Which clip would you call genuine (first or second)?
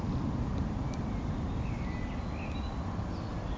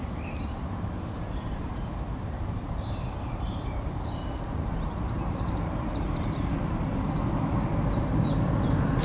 first